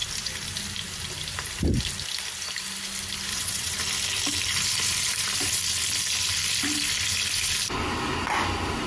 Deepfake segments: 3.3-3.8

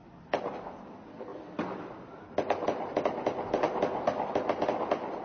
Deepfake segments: 0.0-0.7; 1.3-2.2

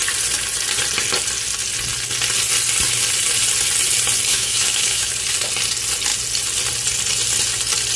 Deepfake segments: 4.3-5.1

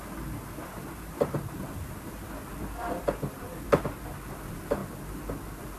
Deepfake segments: 0.6-4.0

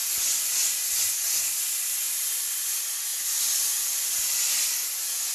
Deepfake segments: 3.1-4.5

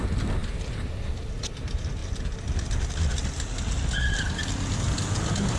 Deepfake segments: none